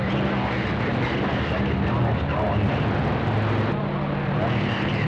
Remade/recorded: recorded